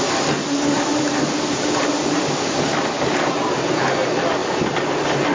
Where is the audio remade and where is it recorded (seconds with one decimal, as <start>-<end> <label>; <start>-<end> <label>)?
0.0-0.4 recorded; 0.4-3.6 remade; 3.6-5.3 recorded